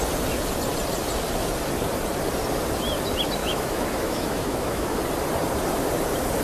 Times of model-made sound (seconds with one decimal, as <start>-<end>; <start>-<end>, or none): 3.4-5.0